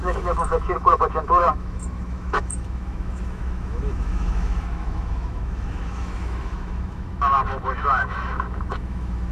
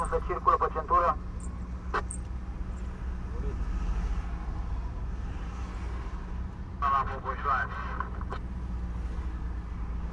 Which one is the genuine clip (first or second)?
second